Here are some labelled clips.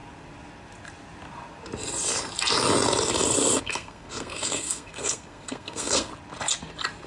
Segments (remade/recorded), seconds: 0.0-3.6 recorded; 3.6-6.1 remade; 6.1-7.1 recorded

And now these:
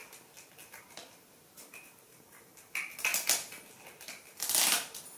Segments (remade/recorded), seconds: 0.0-5.2 recorded

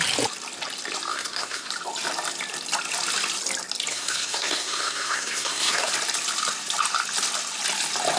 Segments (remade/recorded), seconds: 0.0-1.1 recorded; 1.1-1.7 remade; 1.7-3.9 recorded; 3.9-5.9 remade; 5.9-8.2 recorded

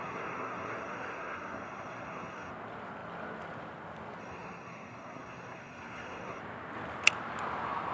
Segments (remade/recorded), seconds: 0.0-2.5 remade; 2.5-4.2 recorded; 4.2-6.4 remade; 6.4-7.9 recorded

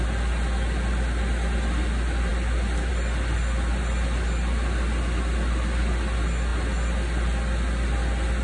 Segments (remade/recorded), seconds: 0.0-8.4 recorded

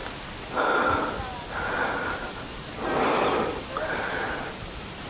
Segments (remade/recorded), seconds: 0.0-5.1 recorded